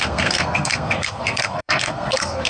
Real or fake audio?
fake